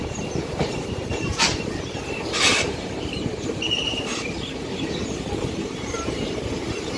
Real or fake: fake